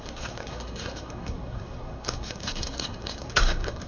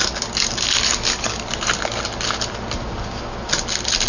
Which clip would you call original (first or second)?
second